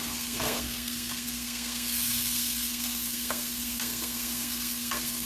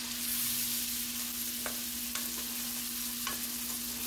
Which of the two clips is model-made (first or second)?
first